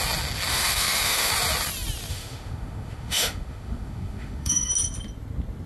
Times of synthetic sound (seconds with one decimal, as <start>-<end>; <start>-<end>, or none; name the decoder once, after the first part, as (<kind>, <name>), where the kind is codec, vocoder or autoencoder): 0.5-1.3 (autoencoder, DAC-VAE); 2.1-4.7